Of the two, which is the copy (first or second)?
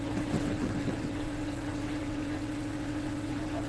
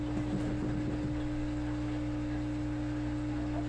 first